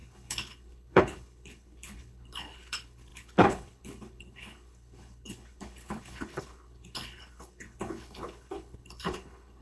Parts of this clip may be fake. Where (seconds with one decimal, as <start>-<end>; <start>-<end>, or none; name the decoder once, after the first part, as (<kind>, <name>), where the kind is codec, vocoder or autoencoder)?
0.0-9.6 (codec, HILCodec)